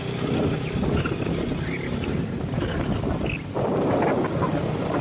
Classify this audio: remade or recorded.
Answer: recorded